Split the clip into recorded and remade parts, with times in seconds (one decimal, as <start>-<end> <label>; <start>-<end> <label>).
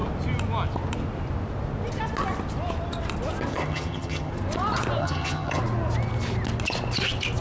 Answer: 0.0-3.5 recorded; 3.5-4.3 remade; 4.3-5.0 recorded; 5.0-5.6 remade; 5.6-7.4 recorded